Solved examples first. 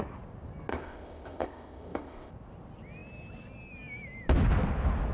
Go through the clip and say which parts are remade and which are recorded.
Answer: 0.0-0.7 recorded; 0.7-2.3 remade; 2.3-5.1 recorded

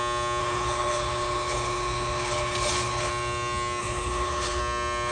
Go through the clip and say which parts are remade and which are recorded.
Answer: 0.0-0.4 recorded; 0.4-3.1 remade; 3.1-3.8 recorded; 3.8-4.6 remade; 4.6-5.1 recorded

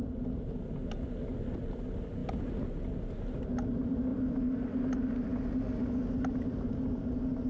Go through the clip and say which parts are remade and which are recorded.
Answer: 0.0-7.5 recorded